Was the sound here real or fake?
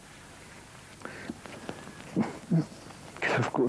real